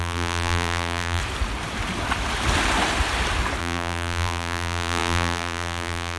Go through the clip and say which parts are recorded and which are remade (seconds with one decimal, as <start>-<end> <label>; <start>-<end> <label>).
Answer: 0.0-1.2 remade; 1.2-3.6 recorded; 3.6-6.2 remade